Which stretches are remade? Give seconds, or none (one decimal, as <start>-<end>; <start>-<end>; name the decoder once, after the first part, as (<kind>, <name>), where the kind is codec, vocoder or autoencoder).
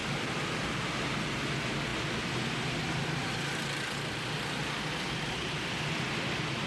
none